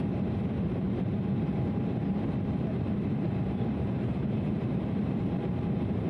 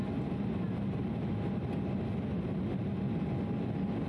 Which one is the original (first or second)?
second